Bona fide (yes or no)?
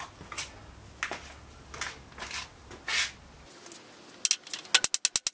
yes